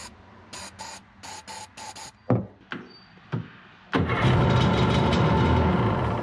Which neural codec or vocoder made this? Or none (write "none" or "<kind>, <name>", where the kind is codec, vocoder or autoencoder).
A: none